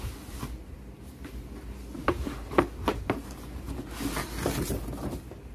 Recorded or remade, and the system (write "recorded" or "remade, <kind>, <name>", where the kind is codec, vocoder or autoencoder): recorded